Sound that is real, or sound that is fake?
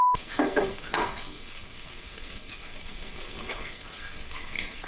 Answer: fake